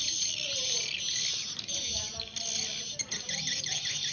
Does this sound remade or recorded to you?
recorded